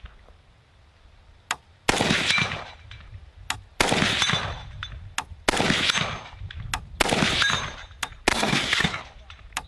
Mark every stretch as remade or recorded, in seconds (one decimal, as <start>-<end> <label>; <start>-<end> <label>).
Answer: 0.0-8.3 recorded; 8.3-9.0 remade; 9.0-9.7 recorded

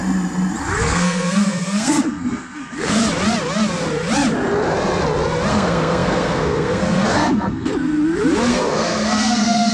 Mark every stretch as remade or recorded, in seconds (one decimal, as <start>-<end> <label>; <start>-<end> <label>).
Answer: 0.0-0.8 recorded; 0.8-3.0 remade; 3.0-5.5 recorded; 5.5-7.7 remade; 7.7-8.5 recorded; 8.5-9.7 remade